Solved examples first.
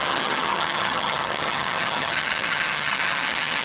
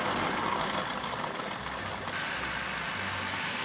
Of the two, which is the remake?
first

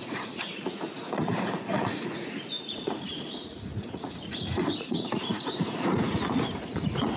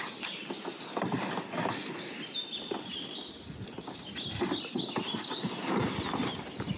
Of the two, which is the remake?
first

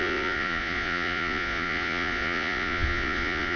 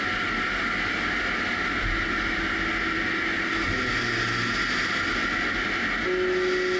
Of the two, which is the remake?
first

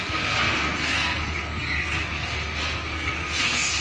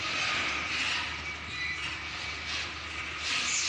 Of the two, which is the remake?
first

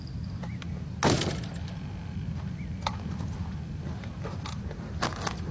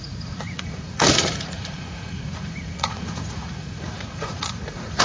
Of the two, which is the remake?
second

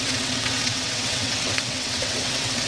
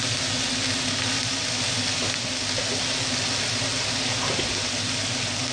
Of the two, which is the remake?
first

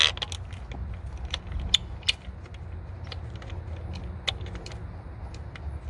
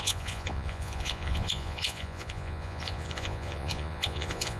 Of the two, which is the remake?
second